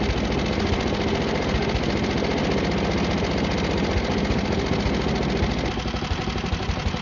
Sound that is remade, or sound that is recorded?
recorded